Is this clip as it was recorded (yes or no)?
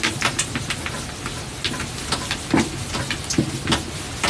yes